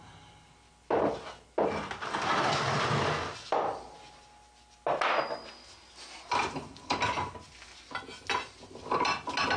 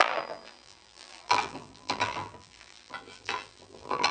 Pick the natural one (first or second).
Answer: first